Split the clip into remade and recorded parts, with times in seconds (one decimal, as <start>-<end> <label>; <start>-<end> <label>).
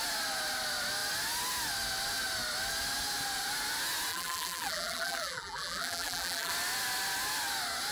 0.0-4.1 recorded; 4.1-6.5 remade; 6.5-7.9 recorded